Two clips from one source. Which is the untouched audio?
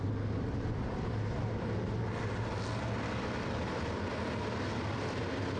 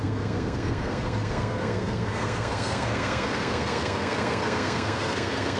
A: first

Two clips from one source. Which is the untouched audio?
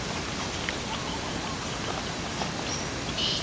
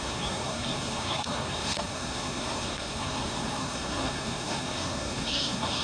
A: first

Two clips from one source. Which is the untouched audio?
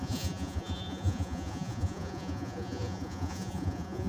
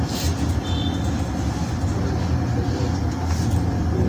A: second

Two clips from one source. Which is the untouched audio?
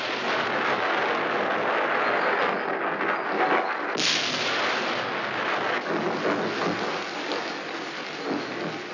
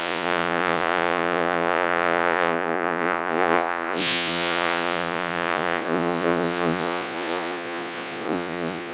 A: first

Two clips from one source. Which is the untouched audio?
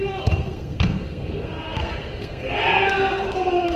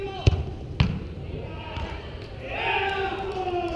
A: second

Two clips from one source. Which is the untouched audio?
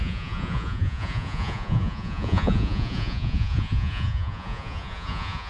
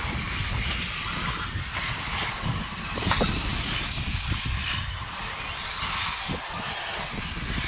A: second